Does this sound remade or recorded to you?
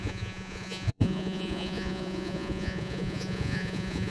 remade